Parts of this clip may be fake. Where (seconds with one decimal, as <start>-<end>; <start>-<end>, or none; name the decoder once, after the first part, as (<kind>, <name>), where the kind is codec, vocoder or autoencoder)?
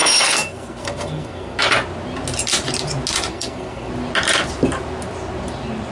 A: 0.0-1.6 (codec, SNAC); 3.3-3.9